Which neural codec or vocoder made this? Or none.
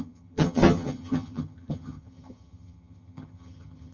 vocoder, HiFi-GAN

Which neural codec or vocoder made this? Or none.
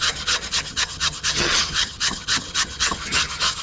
vocoder, HiFi-GAN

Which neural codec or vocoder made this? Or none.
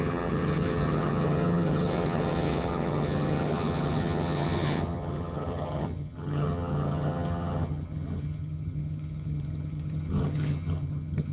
vocoder, HiFi-GAN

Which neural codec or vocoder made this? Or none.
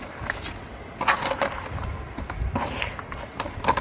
none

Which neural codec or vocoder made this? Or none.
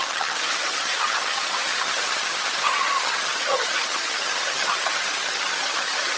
vocoder, HiFi-GAN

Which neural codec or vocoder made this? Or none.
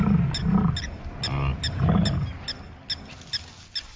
none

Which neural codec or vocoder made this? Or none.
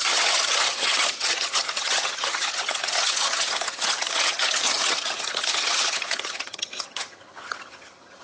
vocoder, HiFi-GAN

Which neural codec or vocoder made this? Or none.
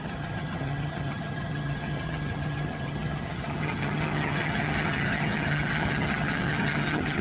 vocoder, HiFi-GAN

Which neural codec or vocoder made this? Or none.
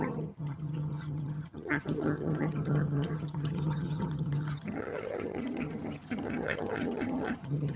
vocoder, HiFi-GAN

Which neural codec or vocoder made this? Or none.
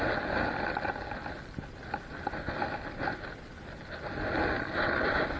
none